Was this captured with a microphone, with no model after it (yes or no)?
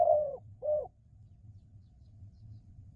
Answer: no